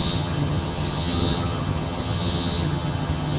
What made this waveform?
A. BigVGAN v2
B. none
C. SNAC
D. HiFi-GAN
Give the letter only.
D